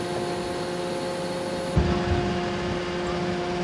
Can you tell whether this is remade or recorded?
recorded